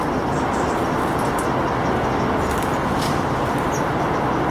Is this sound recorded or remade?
recorded